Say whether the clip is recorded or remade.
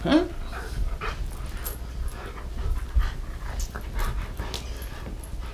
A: recorded